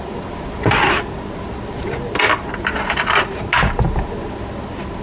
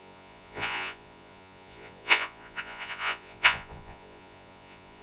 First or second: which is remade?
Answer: second